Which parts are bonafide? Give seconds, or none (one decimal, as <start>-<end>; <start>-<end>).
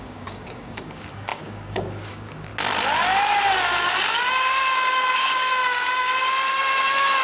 2.5-4.3